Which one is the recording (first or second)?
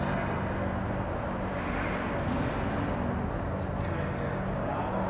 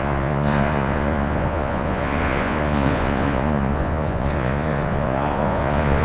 first